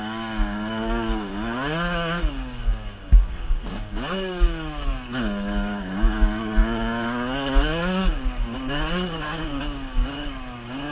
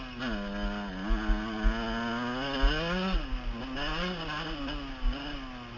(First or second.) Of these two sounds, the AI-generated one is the first